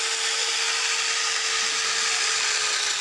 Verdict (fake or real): fake